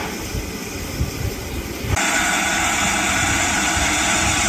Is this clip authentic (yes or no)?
yes